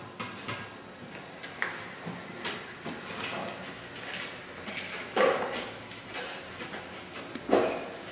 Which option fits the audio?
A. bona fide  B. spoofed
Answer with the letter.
A